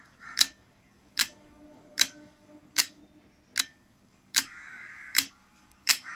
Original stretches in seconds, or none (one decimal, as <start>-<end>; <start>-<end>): 3.0-3.6